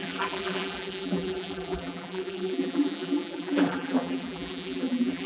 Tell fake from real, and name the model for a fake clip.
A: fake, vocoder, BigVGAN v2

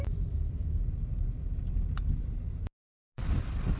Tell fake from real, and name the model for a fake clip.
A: real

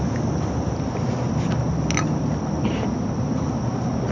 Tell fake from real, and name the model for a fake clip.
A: real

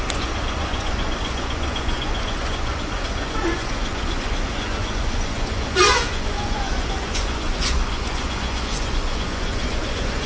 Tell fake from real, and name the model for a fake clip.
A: fake, vocoder, Vocos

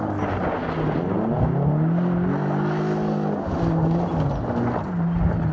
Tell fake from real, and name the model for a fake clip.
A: real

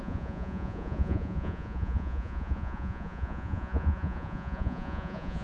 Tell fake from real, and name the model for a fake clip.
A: fake, vocoder, Vocos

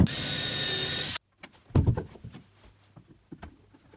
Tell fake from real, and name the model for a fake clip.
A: real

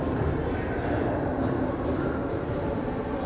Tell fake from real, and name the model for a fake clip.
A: real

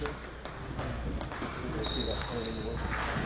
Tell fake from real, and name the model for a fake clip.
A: real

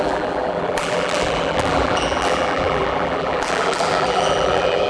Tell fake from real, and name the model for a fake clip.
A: fake, vocoder, BigVGAN v2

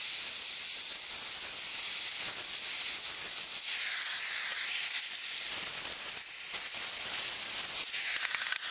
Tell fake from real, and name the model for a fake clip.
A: real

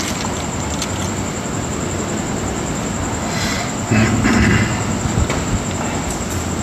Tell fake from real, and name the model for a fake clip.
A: real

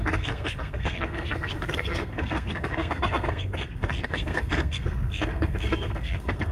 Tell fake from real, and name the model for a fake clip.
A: fake, codec, SNAC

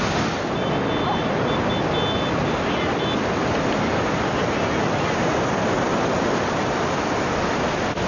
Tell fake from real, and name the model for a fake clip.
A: real